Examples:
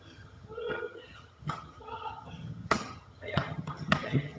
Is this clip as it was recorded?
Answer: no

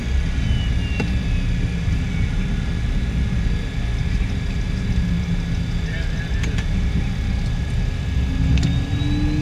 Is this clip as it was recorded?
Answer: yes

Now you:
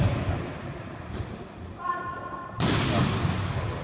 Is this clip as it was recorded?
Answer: yes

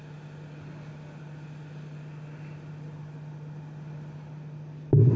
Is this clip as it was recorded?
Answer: yes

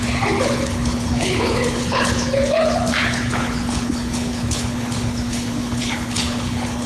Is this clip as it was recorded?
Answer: no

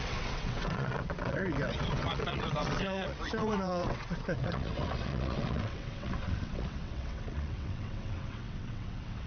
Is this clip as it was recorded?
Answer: no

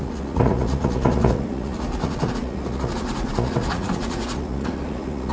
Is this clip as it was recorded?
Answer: no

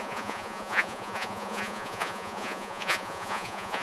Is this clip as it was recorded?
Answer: no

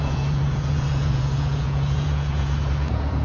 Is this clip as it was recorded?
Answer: no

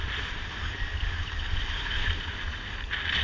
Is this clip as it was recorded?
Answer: yes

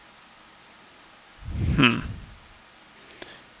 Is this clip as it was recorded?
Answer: yes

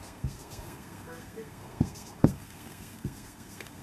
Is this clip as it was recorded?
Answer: no